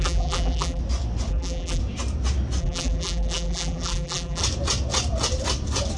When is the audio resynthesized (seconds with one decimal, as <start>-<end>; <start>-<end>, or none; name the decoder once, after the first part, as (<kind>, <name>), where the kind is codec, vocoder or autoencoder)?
0.0-0.8 (vocoder, BigVGAN v2); 1.3-1.8; 2.6-4.4